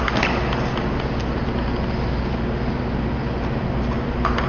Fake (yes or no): no